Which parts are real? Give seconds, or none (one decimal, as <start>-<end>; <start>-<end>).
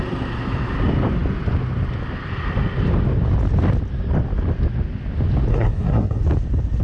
0.0-5.5; 6.2-6.8